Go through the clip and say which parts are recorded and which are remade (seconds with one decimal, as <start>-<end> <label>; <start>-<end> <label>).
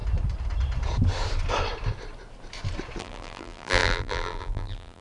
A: 0.0-3.0 recorded; 3.0-5.0 remade